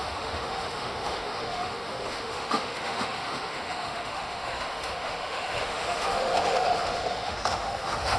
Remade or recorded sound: remade